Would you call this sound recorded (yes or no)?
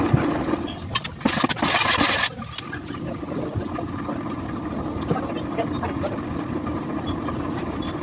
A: yes